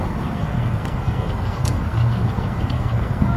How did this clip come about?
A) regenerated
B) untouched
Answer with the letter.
A